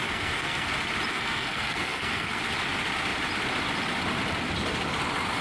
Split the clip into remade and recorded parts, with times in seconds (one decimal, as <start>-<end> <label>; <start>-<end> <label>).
0.0-0.7 remade; 0.7-1.1 recorded; 1.1-2.4 remade; 2.4-5.4 recorded